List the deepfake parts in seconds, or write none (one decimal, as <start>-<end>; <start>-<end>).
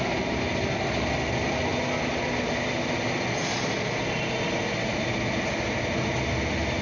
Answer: none